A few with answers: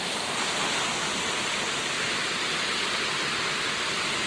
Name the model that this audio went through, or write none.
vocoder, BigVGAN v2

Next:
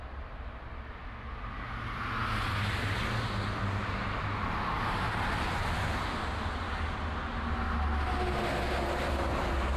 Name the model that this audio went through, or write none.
none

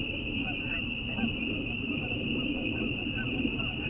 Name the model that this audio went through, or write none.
vocoder, BigVGAN v2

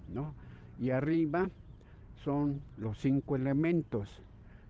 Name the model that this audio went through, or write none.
vocoder, BigVGAN v2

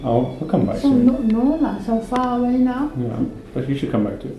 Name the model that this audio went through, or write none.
none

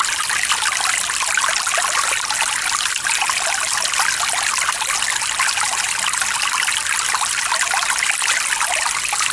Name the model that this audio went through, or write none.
none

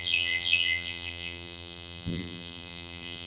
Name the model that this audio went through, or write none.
vocoder, BigVGAN v2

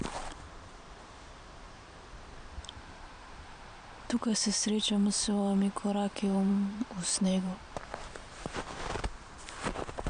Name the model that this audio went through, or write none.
vocoder, BigVGAN v2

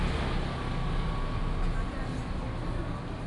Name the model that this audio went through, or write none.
none